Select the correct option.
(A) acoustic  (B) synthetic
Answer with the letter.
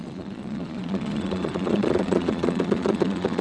B